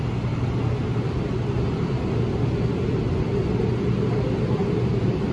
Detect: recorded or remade recorded